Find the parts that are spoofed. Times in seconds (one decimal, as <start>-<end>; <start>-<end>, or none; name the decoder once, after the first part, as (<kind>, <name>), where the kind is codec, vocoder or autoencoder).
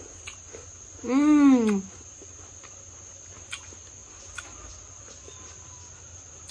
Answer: none